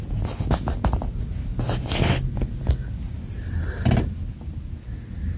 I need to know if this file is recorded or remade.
recorded